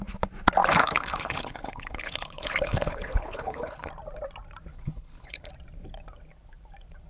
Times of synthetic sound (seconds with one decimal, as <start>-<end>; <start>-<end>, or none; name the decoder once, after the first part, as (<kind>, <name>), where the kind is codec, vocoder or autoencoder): 0.7-3.9 (codec, HILCodec); 4.7-5.5